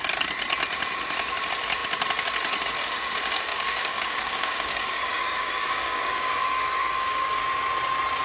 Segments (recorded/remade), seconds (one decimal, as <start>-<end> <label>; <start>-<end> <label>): 0.0-3.5 recorded; 3.5-7.4 remade; 7.4-8.2 recorded